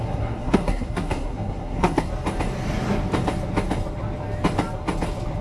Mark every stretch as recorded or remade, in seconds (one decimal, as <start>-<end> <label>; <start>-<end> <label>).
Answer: 0.0-2.1 remade; 2.1-5.4 recorded